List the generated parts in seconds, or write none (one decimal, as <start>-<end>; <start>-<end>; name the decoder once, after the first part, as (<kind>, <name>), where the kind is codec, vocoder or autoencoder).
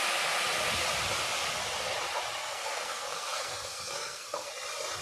2.4-4.5 (codec, SNAC)